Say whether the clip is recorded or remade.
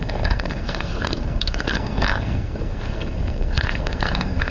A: remade